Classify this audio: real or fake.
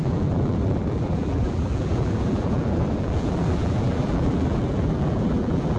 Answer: fake